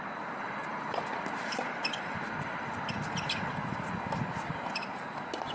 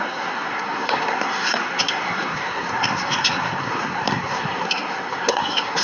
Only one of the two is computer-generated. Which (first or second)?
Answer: second